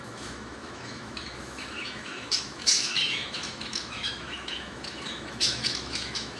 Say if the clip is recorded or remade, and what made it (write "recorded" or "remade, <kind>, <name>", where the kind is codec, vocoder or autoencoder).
remade, autoencoder, DAC-VAE